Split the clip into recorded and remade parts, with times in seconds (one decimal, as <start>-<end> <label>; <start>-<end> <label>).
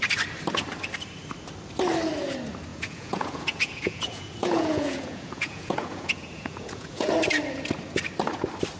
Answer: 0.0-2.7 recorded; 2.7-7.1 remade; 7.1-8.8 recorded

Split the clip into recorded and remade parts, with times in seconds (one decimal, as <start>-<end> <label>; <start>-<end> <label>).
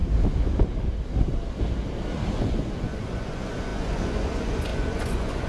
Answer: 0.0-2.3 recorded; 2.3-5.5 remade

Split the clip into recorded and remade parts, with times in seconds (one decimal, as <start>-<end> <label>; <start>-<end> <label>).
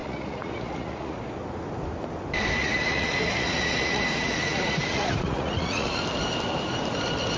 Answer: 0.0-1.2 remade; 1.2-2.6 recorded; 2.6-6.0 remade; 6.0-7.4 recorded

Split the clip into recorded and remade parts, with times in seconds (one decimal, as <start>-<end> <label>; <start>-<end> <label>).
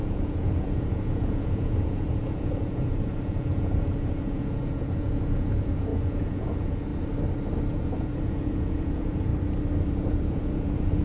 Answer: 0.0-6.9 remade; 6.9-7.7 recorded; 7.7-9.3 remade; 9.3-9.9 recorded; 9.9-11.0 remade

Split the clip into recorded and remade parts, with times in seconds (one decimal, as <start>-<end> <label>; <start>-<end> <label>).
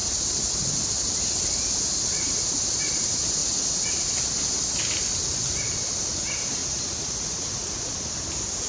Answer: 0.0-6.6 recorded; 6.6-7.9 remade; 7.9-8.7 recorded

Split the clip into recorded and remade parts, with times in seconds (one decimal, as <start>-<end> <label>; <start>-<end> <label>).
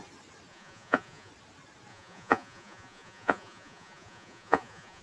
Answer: 0.0-0.5 recorded; 0.5-1.3 remade; 1.3-1.9 recorded; 1.9-5.0 remade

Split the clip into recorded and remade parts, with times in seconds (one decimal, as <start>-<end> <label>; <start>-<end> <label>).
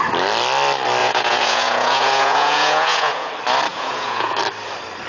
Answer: 0.0-1.0 recorded; 1.0-3.3 remade; 3.3-3.7 recorded; 3.7-4.4 remade; 4.4-5.1 recorded